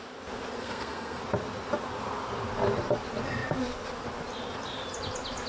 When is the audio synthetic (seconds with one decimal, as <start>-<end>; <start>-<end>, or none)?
0.6-1.2